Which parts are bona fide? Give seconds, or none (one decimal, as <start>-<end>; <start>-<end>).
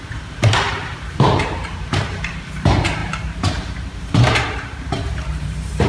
none